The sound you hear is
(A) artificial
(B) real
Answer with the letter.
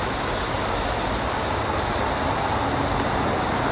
B